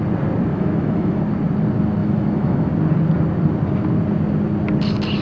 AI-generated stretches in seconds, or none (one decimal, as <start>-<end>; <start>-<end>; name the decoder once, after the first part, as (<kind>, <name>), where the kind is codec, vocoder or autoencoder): 0.5-1.2 (autoencoder, DAC-VAE); 2.0-2.7